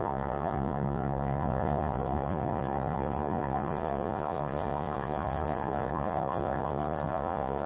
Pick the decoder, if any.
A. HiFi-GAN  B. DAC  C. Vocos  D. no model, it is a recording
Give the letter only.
C